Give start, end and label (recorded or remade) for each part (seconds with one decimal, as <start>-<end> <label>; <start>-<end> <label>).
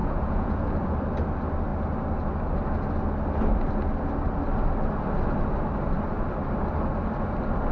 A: 0.0-0.6 remade; 0.6-7.7 recorded